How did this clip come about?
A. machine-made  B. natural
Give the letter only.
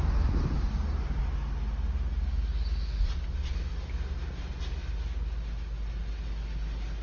B